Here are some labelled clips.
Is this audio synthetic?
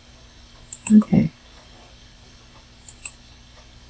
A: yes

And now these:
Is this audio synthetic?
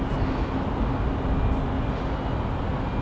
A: no